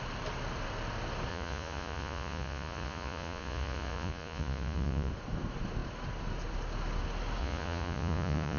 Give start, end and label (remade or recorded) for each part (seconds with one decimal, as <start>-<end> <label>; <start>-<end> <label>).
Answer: 0.0-1.3 recorded; 1.3-5.1 remade; 5.1-7.4 recorded; 7.4-8.6 remade